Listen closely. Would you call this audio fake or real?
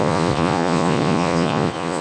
fake